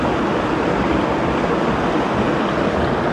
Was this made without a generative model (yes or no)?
yes